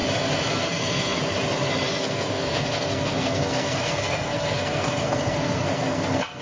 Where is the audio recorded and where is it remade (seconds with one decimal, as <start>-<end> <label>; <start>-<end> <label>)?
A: 0.0-0.6 recorded; 0.6-1.2 remade; 1.2-1.9 recorded; 1.9-6.4 remade